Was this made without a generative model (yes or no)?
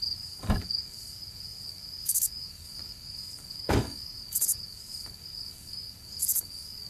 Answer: no